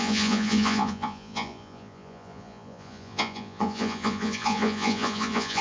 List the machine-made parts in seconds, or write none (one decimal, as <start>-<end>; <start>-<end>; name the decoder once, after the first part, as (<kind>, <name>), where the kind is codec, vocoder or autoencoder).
0.0-5.6 (vocoder, Vocos)